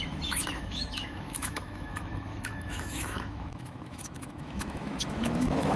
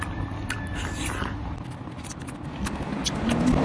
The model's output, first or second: first